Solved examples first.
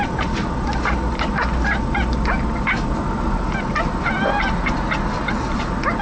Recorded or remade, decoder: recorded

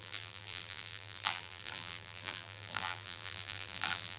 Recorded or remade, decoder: remade, vocoder, BigVGAN v2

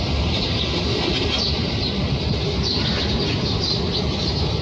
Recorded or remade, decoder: remade, vocoder, BigVGAN v2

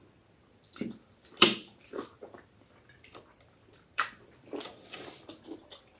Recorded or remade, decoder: remade, vocoder, BigVGAN v2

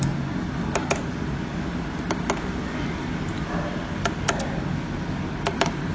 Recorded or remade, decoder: recorded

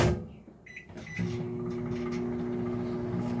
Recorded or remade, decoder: recorded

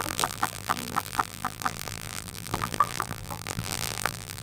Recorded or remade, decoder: remade, vocoder, BigVGAN v2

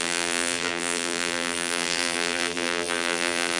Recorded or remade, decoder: remade, vocoder, BigVGAN v2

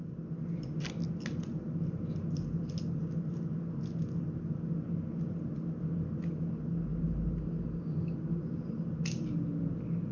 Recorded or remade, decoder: recorded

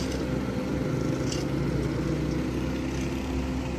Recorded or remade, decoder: recorded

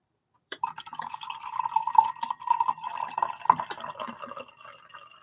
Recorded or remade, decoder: remade, vocoder, BigVGAN v2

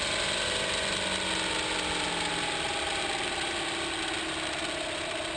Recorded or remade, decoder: recorded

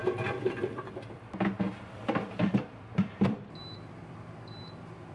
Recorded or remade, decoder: remade, vocoder, BigVGAN v2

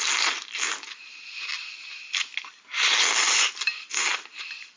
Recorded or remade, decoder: recorded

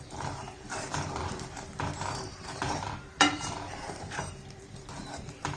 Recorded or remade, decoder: remade, vocoder, BigVGAN v2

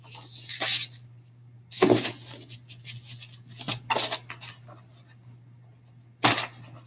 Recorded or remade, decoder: recorded